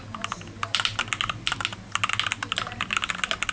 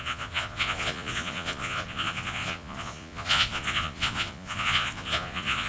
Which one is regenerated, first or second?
second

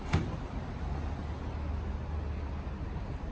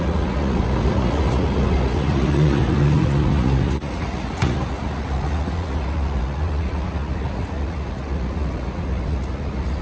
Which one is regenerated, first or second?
second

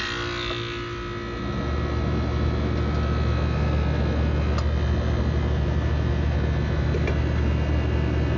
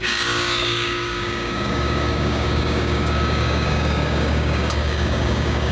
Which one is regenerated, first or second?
second